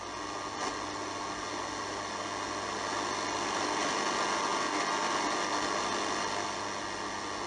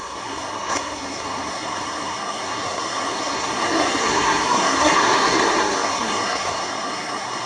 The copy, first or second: second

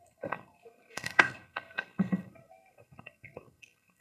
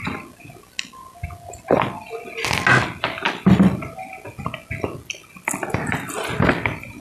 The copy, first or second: first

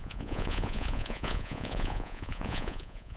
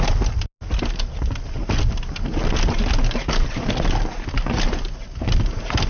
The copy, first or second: first